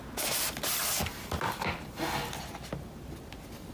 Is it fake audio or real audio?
real